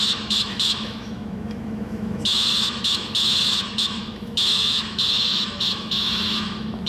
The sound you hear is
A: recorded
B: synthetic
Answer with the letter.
B